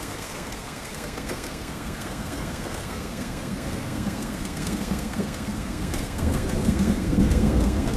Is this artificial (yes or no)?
yes